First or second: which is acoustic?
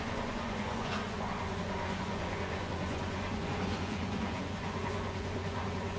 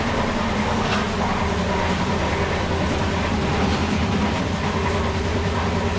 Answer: second